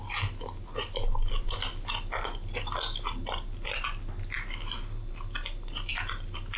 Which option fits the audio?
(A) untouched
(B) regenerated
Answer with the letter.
A